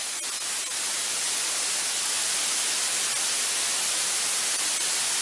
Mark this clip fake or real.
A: real